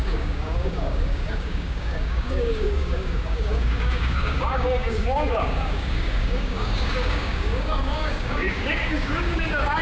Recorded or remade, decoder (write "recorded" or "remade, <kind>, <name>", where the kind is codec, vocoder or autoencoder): remade, codec, DAC